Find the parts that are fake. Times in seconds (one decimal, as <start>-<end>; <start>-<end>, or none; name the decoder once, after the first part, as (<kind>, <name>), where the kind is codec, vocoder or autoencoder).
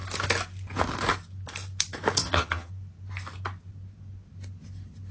2.2-2.7 (vocoder, HiFi-GAN)